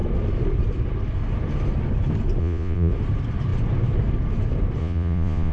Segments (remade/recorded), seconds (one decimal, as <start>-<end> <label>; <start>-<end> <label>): 0.0-2.4 recorded; 2.4-2.9 remade; 2.9-4.8 recorded; 4.8-5.5 remade